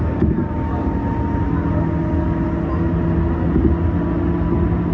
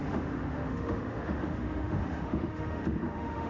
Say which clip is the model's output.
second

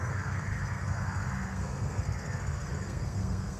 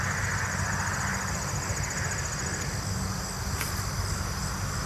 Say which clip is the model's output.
first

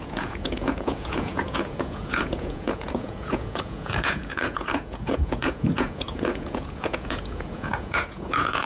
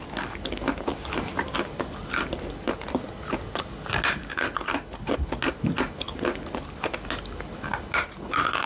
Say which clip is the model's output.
first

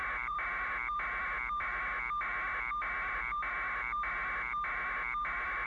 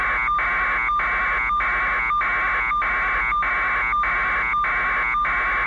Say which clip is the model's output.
first